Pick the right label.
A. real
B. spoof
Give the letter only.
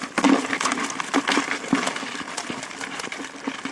A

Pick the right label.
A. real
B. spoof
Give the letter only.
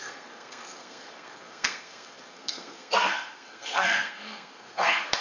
B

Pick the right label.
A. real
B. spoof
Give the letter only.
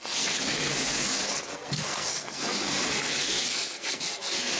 B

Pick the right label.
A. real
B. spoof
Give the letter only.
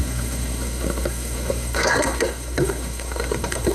B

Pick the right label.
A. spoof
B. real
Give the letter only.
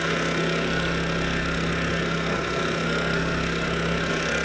A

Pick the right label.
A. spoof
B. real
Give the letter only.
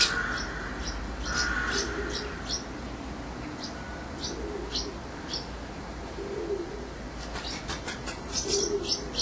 B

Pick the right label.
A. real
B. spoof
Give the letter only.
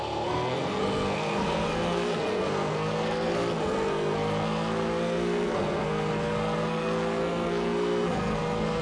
B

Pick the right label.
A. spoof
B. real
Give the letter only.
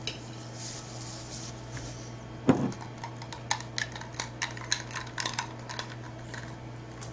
B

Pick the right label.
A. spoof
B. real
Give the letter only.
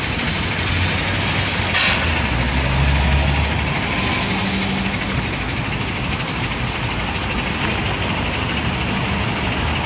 B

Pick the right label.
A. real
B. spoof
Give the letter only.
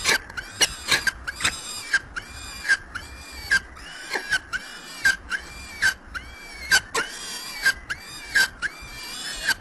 A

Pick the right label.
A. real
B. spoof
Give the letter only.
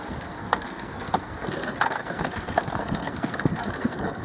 B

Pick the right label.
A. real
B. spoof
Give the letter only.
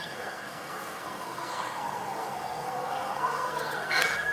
B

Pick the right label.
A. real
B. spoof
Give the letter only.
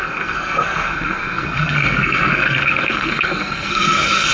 B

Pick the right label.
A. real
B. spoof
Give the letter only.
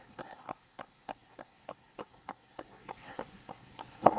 B